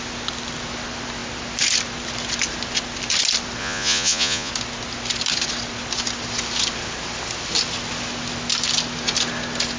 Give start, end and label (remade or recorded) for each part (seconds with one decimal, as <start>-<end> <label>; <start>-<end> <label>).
0.0-3.6 recorded; 3.6-4.5 remade; 4.5-9.8 recorded